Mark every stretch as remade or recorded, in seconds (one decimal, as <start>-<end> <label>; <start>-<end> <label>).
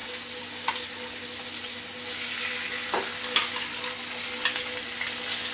0.0-5.5 recorded